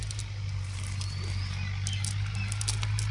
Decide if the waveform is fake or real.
real